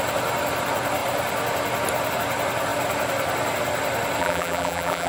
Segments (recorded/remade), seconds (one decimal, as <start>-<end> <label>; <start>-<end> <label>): 0.0-4.2 recorded; 4.2-5.1 remade